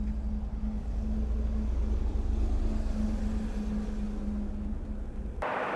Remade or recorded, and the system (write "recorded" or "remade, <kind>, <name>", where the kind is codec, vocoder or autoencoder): recorded